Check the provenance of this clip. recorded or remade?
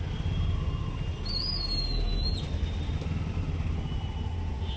recorded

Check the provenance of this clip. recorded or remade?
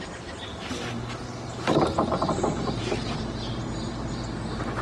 recorded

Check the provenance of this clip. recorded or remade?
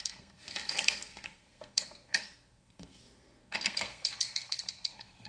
remade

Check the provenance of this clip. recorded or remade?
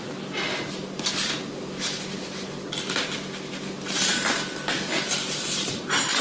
recorded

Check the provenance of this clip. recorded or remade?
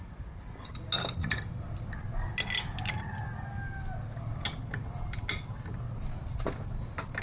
recorded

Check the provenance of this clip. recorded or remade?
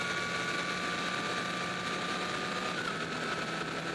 recorded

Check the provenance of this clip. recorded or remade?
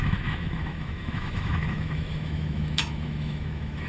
remade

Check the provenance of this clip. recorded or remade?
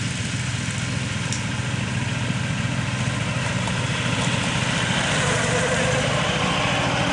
recorded